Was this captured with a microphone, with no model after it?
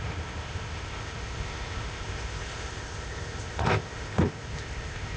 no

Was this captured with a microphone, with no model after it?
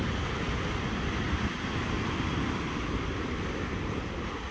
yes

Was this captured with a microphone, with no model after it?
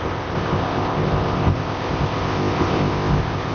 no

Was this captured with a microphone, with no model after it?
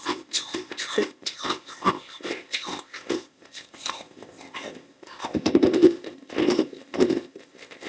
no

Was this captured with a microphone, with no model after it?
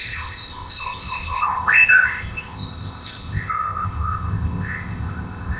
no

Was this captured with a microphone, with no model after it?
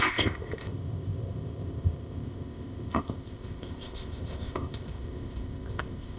no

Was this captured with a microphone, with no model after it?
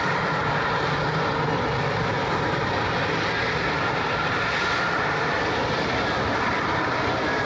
yes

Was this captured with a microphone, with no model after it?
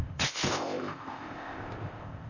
no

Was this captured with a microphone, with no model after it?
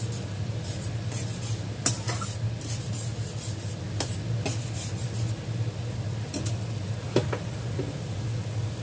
yes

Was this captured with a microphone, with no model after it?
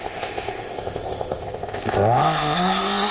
no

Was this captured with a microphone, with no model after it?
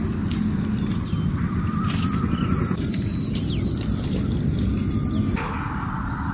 yes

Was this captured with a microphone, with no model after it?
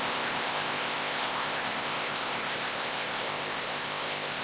no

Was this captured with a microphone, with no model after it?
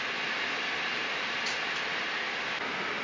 yes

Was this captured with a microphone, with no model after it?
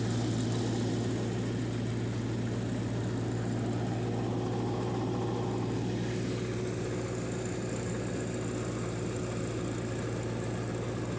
yes